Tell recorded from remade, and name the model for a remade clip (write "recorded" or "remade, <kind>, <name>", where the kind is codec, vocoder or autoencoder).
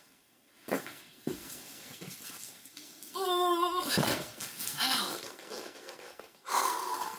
remade, codec, SNAC